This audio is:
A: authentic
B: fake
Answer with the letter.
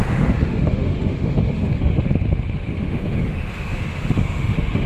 B